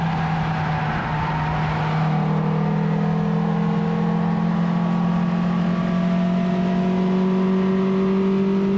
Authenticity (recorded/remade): recorded